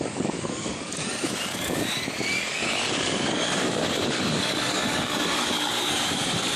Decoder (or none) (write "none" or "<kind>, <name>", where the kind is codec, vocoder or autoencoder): codec, DAC